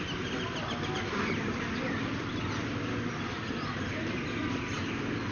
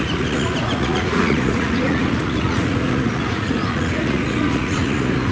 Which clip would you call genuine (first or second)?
first